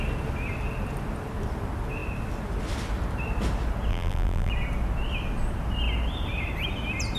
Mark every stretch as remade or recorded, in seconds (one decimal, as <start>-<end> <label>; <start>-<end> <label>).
0.0-3.9 recorded; 3.9-4.5 remade; 4.5-7.2 recorded